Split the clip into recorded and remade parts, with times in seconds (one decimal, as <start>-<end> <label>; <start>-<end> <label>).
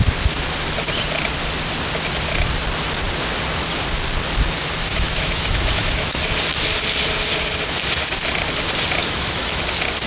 0.0-4.9 recorded; 4.9-6.2 remade; 6.2-9.0 recorded; 9.0-9.6 remade; 9.6-10.1 recorded